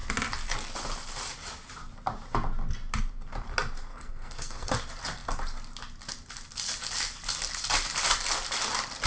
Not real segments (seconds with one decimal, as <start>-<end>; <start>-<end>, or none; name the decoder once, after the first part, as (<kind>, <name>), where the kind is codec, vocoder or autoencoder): 3.9-4.7 (codec, SNAC)